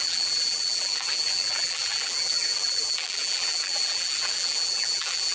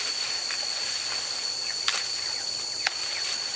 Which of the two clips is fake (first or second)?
first